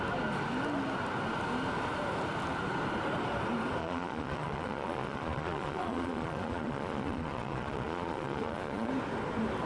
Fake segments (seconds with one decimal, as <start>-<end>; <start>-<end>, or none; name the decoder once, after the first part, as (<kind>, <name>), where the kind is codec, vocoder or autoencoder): 3.8-8.9 (vocoder, Vocos)